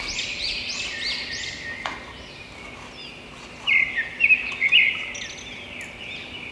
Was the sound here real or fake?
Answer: real